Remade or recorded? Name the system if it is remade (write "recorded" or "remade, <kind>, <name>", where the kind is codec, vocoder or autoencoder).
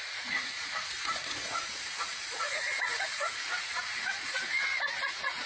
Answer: remade, vocoder, Vocos